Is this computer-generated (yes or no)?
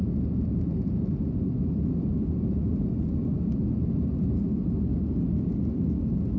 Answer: no